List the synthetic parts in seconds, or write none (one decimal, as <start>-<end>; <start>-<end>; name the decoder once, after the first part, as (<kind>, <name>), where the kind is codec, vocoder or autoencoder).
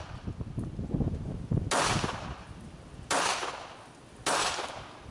none